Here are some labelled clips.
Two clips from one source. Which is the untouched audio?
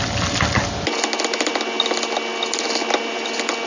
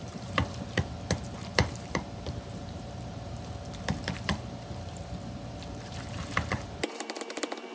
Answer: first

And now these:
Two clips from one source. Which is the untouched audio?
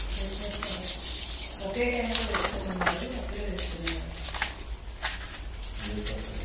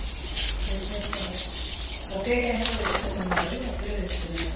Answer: first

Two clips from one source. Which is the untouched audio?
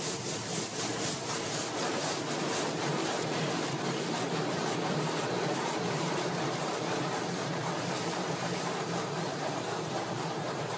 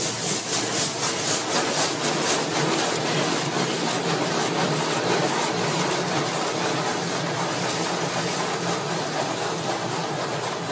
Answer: second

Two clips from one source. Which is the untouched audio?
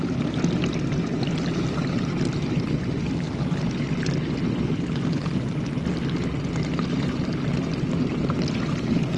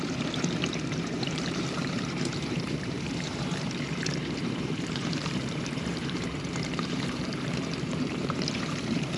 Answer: first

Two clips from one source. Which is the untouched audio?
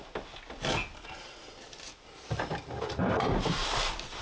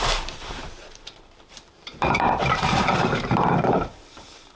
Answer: first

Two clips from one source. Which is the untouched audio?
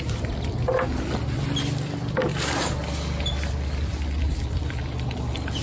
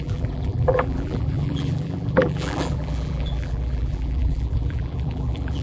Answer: first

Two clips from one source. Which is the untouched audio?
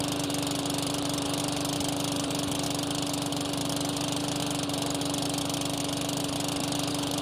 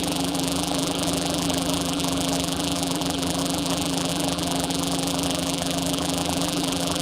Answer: first